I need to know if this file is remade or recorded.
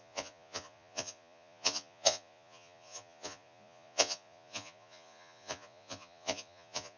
remade